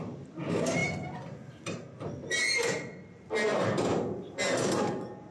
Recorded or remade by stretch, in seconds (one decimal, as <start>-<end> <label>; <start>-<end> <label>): 0.0-5.3 recorded